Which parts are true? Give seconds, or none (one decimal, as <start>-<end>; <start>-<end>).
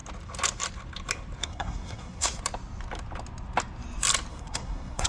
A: 0.0-1.4; 2.4-4.3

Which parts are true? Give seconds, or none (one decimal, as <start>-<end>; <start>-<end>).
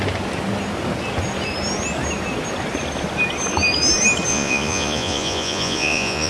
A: 0.0-4.3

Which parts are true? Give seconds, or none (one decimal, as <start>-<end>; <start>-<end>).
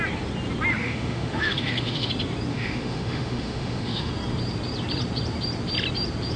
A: 0.0-0.7; 2.1-2.5; 4.1-6.4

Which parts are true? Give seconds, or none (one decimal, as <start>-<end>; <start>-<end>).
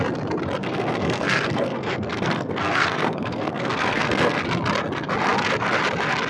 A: 0.0-0.6; 4.4-6.3